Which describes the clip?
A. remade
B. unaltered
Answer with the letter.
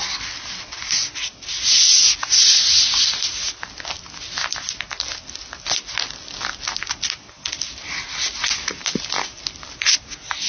B